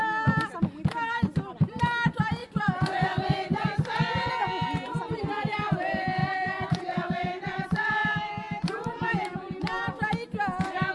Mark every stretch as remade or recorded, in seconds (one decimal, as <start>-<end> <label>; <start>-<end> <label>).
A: 0.0-2.4 recorded; 2.4-4.3 remade; 4.3-6.2 recorded; 6.2-7.9 remade; 7.9-10.9 recorded